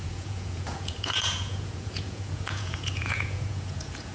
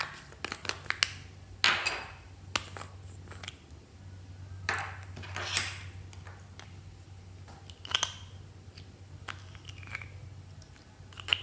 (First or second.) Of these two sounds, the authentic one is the second